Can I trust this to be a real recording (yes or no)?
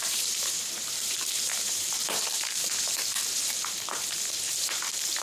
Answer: no